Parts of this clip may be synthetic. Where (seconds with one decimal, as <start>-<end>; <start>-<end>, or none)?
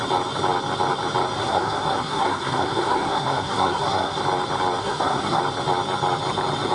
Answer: 1.4-4.2; 4.8-5.4